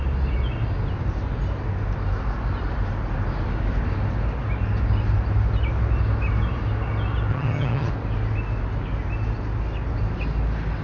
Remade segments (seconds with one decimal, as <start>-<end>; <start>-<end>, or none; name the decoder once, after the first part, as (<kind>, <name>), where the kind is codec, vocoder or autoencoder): 7.3-7.9 (vocoder, HiFi-GAN)